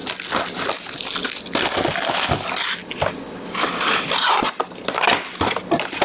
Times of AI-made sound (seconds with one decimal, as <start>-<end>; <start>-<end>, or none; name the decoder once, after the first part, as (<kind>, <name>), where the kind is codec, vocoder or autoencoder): none

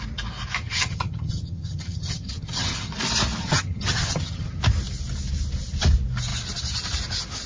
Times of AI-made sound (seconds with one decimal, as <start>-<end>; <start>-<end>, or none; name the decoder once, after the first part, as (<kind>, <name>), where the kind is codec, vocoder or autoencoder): 0.6-2.9 (vocoder, HiFi-GAN); 3.4-4.6

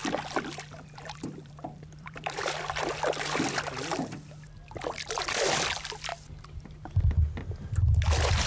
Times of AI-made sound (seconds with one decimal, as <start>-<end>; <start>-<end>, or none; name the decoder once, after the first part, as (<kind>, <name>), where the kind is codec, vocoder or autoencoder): 0.0-2.8 (vocoder, BigVGAN v2)

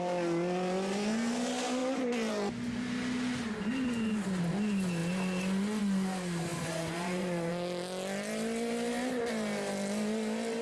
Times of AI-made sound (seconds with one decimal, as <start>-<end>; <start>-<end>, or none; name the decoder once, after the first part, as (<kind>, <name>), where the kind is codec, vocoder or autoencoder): 6.5-7.5 (vocoder, Vocos)

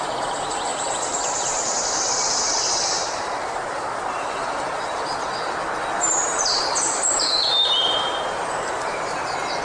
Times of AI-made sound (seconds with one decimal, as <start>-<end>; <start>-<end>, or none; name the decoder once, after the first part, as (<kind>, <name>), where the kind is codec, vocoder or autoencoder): 0.7-5.5 (vocoder, BigVGAN v2); 6.2-9.0

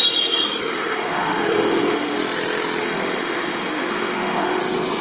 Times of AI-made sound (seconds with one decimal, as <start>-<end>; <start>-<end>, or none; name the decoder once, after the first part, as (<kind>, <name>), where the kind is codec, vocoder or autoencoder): 0.8-2.2 (autoencoder, DAC-VAE); 2.8-4.6

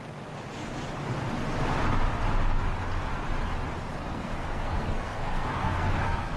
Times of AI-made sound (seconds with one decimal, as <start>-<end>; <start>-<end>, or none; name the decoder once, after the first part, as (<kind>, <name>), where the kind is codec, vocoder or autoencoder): 4.1-6.4 (codec, SNAC)